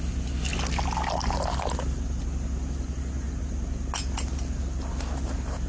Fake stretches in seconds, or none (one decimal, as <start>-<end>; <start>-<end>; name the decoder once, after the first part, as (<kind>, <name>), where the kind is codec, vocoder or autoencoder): none